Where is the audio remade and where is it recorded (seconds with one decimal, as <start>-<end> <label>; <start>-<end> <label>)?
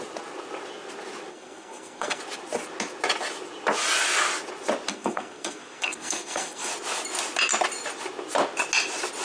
0.0-1.3 recorded; 1.3-2.2 remade; 2.2-4.9 recorded; 4.9-6.7 remade; 6.7-9.2 recorded